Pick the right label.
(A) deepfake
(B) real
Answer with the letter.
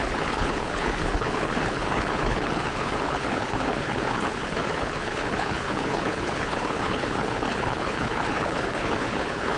A